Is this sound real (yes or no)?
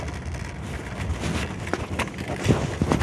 yes